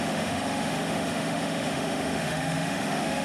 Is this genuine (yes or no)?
no